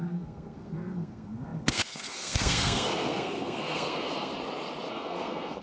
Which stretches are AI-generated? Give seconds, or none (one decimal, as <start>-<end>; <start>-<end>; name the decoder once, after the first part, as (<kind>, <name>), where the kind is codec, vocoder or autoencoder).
0.0-4.3 (codec, SNAC); 4.9-5.6